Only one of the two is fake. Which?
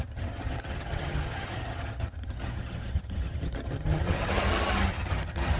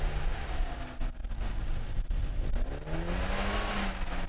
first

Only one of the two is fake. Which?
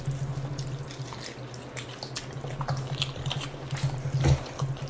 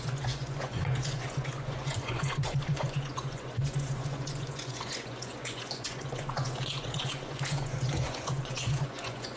second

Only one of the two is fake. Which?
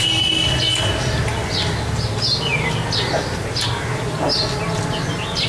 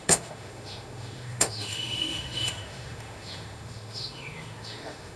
second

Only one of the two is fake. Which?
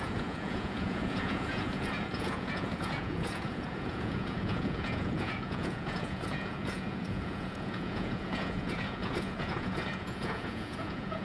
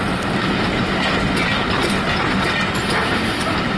first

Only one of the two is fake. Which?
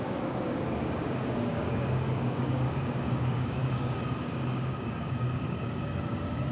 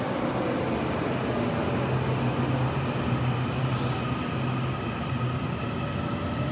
first